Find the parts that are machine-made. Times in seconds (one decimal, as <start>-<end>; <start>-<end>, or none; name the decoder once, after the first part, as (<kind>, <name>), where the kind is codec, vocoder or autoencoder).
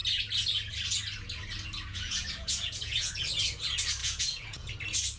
1.9-3.1 (vocoder, Vocos); 4.0-4.7